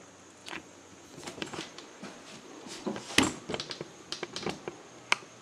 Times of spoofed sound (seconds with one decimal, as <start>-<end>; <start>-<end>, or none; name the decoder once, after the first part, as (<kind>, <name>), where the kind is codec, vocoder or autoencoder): 0.4-3.1 (vocoder, Vocos)